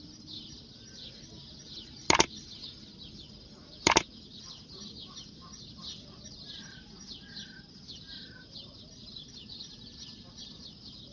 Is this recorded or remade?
recorded